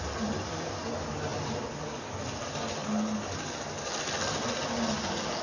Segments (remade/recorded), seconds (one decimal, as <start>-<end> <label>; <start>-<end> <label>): 0.0-5.4 recorded